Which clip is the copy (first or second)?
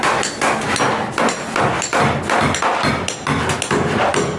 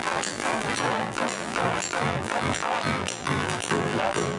second